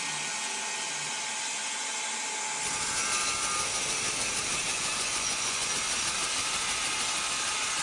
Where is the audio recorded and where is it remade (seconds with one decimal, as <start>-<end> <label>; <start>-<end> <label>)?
0.0-4.7 recorded; 4.7-5.7 remade; 5.7-7.8 recorded